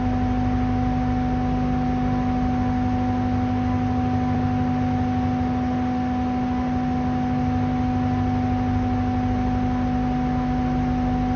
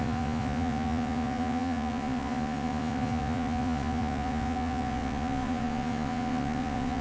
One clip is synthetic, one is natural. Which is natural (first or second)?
first